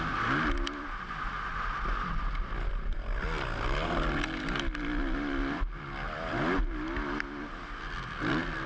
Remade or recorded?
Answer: recorded